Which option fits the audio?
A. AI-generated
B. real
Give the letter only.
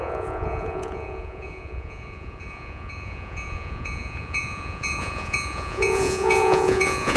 A